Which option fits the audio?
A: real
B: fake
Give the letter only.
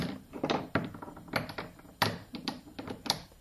A